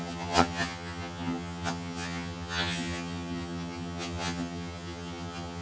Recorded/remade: remade